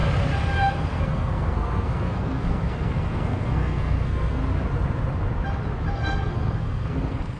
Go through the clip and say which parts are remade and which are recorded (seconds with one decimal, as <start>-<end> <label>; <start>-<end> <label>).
0.0-0.7 recorded; 0.7-4.4 remade; 4.4-5.9 recorded; 5.9-7.4 remade

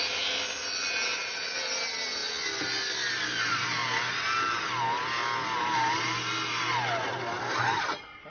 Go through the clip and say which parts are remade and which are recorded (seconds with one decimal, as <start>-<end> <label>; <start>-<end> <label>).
0.0-8.3 recorded

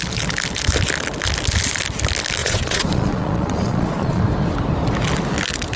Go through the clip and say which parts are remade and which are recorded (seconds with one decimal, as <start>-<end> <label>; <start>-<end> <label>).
0.0-2.4 recorded; 2.4-4.2 remade; 4.2-5.8 recorded

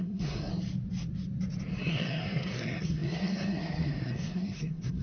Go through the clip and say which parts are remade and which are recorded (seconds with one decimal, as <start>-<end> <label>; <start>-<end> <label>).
0.0-0.5 remade; 0.5-1.8 recorded; 1.8-5.0 remade

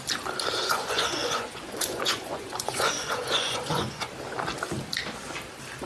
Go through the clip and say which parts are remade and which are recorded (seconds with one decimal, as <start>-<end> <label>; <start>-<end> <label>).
0.0-0.6 recorded; 0.6-4.1 remade; 4.1-5.9 recorded

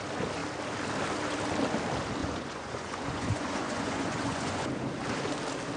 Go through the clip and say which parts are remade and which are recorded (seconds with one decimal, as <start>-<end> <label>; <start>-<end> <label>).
0.0-2.2 recorded; 2.2-4.7 remade; 4.7-5.8 recorded

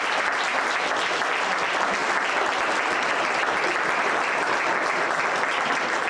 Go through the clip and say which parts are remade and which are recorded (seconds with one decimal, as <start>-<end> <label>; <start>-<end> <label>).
0.0-6.1 recorded

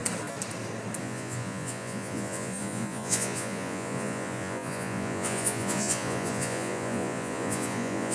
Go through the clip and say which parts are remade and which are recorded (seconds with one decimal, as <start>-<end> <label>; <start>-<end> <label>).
0.0-1.0 recorded; 1.0-8.1 remade